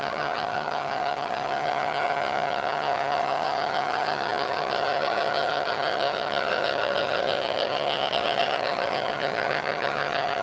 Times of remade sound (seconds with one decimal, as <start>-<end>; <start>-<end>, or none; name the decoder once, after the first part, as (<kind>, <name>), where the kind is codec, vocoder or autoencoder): 0.0-10.4 (vocoder, HiFi-GAN)